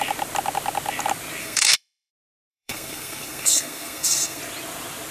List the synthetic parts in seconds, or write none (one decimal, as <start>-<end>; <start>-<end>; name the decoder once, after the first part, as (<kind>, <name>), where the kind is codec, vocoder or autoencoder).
1.4-2.1 (codec, SNAC); 2.5-4.4